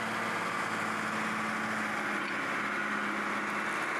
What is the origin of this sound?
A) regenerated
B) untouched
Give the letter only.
B